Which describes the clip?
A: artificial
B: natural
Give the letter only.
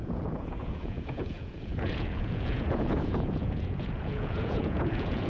A